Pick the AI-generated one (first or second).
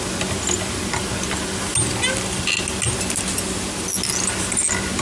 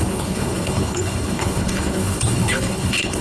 second